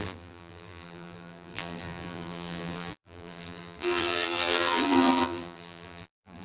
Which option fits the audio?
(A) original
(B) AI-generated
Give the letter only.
B